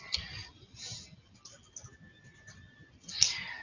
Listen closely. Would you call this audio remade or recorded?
recorded